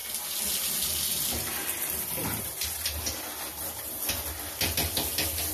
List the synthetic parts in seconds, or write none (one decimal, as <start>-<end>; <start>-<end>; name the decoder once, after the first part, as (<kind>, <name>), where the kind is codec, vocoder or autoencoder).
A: none